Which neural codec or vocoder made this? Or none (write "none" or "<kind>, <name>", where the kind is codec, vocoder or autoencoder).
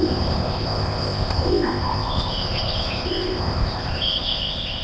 codec, ZipCodec